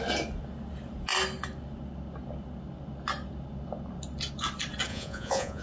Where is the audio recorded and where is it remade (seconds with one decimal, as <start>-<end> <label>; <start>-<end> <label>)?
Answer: 0.0-4.9 recorded; 4.9-5.6 remade